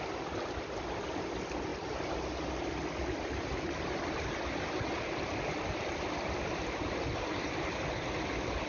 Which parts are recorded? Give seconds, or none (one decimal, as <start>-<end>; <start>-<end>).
0.0-8.7

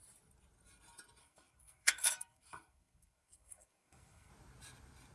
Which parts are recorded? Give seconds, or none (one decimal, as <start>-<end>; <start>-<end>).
0.0-1.2; 4.3-5.1

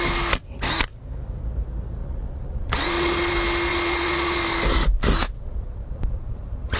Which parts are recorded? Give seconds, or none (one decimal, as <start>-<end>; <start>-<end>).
0.0-2.0; 3.3-3.7; 4.4-5.2

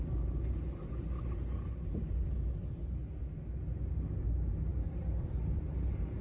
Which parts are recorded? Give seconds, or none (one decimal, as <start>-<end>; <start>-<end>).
0.0-4.7

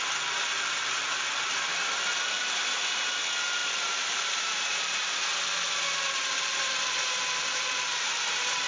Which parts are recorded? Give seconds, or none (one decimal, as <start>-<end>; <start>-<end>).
0.0-3.6; 4.8-8.7

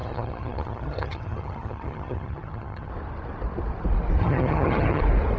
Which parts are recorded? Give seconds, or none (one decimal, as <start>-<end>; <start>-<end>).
2.9-4.2; 5.0-5.4